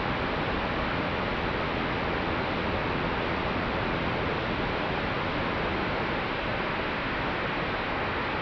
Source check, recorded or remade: recorded